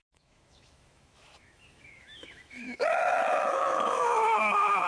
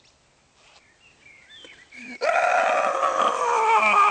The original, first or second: second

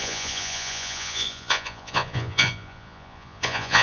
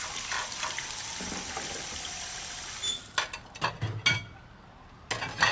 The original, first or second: second